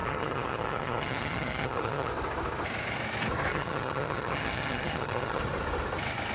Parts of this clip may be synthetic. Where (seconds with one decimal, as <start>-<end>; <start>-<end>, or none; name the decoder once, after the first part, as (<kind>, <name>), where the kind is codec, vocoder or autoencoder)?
0.0-2.1 (vocoder, HiFi-GAN); 3.5-5.4